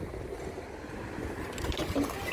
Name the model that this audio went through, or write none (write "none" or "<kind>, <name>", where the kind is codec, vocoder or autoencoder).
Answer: none